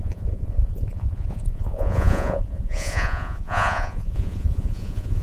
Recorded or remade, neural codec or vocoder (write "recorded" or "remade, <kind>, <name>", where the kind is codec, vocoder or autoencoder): remade, vocoder, Vocos